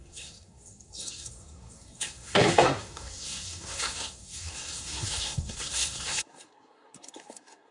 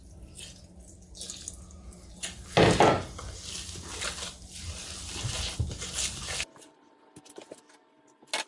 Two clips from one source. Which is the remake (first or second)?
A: first